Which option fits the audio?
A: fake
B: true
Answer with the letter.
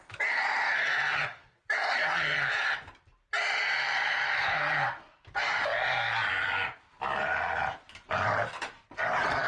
A